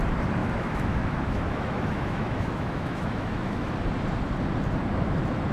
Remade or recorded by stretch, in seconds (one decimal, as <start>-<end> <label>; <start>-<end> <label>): 0.0-0.4 recorded; 0.4-3.7 remade; 3.7-5.5 recorded